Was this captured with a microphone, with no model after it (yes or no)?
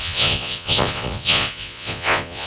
no